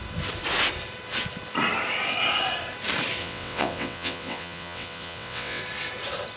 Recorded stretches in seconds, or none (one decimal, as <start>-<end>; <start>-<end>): 0.0-3.2; 5.6-6.4